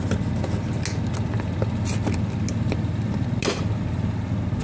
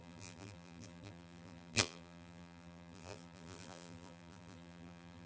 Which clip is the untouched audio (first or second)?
first